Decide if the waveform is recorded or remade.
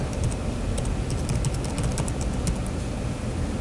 recorded